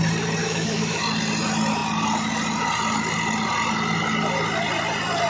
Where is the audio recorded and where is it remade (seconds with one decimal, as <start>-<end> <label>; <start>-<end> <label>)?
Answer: 0.0-0.4 recorded; 0.4-1.0 remade; 1.0-5.3 recorded

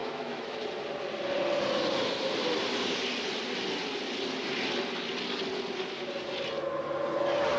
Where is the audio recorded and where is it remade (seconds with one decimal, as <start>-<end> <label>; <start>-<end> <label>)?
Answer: 0.0-0.6 remade; 0.6-7.6 recorded

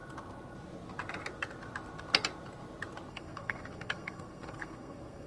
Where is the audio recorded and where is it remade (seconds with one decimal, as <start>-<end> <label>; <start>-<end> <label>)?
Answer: 0.0-3.1 recorded; 3.1-5.3 remade